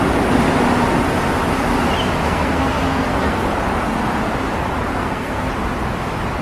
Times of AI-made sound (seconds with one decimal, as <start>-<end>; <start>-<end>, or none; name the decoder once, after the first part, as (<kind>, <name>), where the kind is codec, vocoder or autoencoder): 2.2-3.4 (codec, SNAC); 4.9-5.5

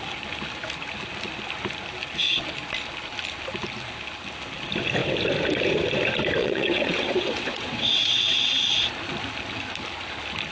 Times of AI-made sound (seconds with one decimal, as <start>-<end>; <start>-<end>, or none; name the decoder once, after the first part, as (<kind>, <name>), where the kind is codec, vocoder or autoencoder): 6.4-8.6 (vocoder, WaveNeXt)

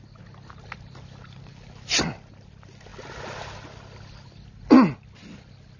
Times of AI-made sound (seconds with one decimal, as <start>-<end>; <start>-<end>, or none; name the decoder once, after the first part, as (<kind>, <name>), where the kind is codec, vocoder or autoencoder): none

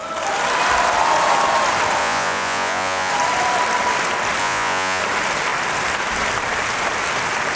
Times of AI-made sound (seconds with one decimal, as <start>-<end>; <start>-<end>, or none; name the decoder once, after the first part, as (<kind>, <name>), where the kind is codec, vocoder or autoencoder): 2.0-3.1 (vocoder, Vocos); 4.4-5.0

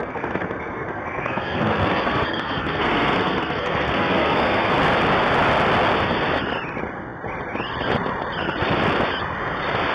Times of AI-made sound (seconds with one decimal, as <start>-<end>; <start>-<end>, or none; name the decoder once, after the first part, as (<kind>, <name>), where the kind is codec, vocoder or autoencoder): 0.0-4.7 (codec, SNAC)

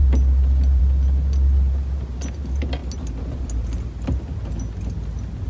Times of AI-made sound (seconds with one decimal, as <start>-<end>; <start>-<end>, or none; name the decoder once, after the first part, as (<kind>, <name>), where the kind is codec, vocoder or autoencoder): none